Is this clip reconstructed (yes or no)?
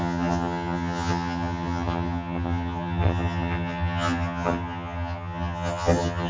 yes